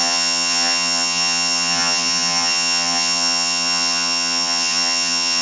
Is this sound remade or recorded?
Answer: remade